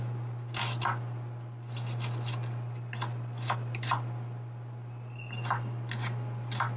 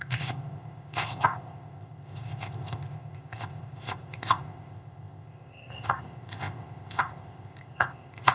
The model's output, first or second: second